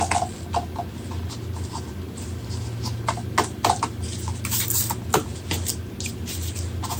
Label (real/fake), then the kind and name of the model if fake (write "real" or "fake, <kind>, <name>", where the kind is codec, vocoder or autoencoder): real